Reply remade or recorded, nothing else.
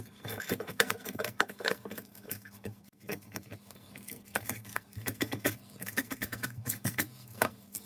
remade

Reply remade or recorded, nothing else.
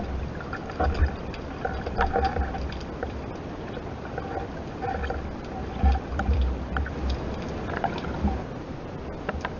recorded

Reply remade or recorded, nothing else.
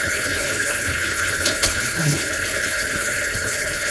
remade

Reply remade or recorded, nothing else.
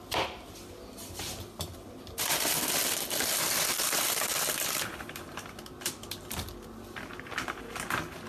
recorded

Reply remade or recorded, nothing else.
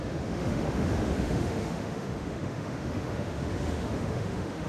remade